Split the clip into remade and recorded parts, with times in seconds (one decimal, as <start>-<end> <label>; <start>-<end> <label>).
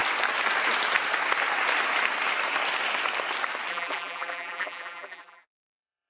0.0-3.7 recorded; 3.7-6.1 remade